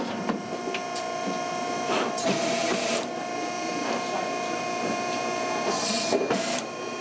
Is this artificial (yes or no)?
yes